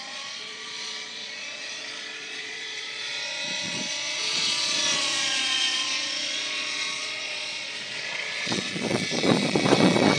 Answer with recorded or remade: remade